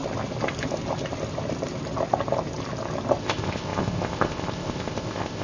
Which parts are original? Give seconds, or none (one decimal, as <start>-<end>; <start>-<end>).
0.0-3.2